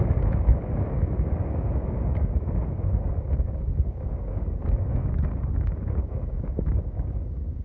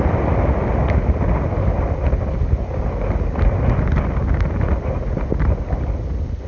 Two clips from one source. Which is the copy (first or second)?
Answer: first